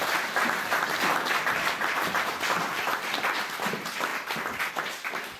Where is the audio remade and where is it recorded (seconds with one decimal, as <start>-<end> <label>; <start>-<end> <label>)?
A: 0.0-5.4 recorded